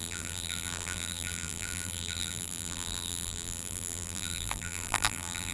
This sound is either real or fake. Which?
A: fake